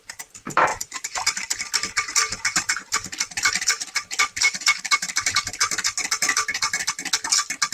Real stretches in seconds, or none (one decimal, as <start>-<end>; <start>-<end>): 0.0-0.7; 5.3-7.7